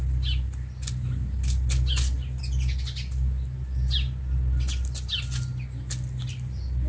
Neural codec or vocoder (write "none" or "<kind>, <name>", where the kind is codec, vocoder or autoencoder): none